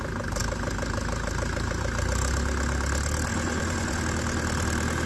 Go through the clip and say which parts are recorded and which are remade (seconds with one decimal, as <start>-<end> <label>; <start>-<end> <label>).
0.0-3.3 recorded; 3.3-4.0 remade; 4.0-5.1 recorded